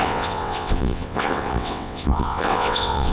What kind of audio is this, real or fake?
fake